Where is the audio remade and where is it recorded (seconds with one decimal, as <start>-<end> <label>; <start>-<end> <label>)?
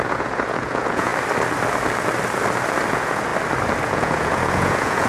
0.0-1.1 remade; 1.1-2.9 recorded; 2.9-3.3 remade; 3.3-3.8 recorded; 3.8-5.1 remade